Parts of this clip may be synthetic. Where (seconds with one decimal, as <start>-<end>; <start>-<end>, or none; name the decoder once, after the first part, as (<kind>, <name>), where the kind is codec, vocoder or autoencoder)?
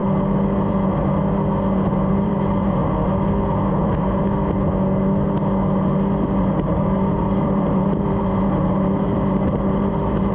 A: 2.1-2.8 (vocoder, BigVGAN v2); 6.4-10.3